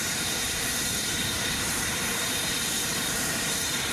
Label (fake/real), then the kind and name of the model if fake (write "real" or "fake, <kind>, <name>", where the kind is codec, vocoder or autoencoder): fake, vocoder, BigVGAN v2